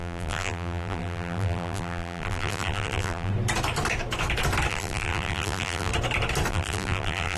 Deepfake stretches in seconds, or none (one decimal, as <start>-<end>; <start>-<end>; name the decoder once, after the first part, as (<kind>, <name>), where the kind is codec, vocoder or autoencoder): 0.0-3.3 (vocoder, BigVGAN v2); 4.7-5.9; 6.5-7.4

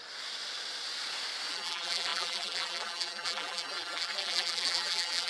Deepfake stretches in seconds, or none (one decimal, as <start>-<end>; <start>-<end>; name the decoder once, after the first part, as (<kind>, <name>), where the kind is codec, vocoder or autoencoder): 1.5-5.3 (vocoder, BigVGAN v2)

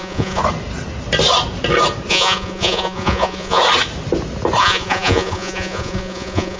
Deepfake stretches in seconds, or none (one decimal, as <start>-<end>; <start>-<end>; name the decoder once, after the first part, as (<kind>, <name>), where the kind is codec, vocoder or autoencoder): 0.0-0.4 (vocoder, Vocos); 2.1-3.6; 4.6-6.6

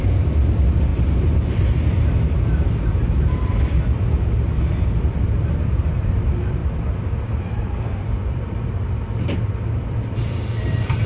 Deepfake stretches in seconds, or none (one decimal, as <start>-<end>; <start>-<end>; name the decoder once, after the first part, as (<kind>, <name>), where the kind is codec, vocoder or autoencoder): 0.0-0.9 (vocoder, BigVGAN v2); 5.0-6.6; 8.1-11.1